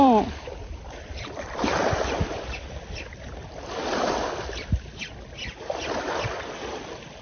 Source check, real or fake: fake